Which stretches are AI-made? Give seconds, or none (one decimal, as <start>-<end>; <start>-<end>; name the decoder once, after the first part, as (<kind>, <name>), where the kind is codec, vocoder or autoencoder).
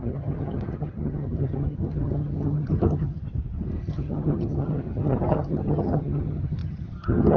0.0-3.2 (vocoder, HiFi-GAN); 3.8-7.4